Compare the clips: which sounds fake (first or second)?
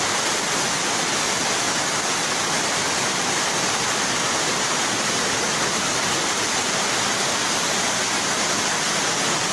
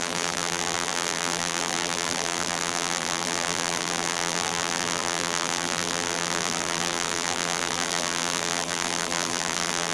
second